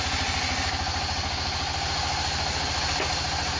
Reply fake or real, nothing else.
real